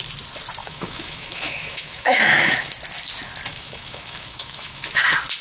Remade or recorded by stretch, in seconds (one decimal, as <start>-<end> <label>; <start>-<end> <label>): 0.0-0.6 recorded; 0.6-2.7 remade; 2.7-3.5 recorded; 3.5-5.0 remade; 5.0-5.4 recorded